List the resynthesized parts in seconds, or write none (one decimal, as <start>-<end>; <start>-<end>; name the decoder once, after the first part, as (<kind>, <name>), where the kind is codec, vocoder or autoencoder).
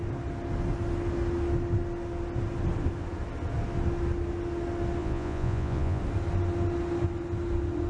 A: 5.0-6.0 (vocoder, Vocos)